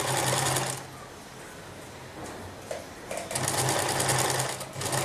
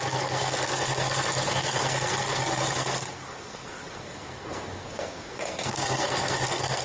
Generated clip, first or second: second